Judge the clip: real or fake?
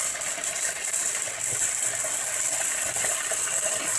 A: real